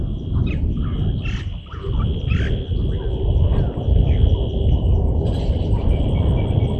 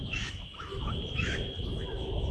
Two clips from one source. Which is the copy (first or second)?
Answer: second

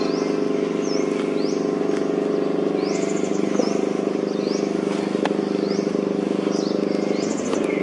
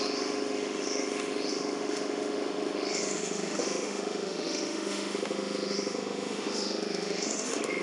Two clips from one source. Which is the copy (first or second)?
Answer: second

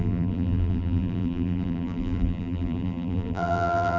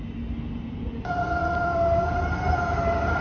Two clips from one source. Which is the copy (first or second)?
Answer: first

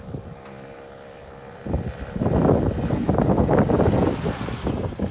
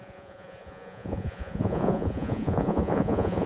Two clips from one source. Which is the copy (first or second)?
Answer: second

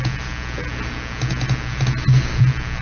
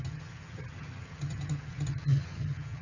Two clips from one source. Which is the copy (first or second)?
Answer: second